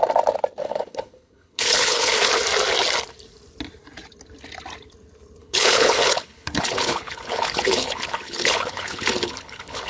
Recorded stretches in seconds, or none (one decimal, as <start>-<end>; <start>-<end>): 0.0-0.6; 2.3-5.4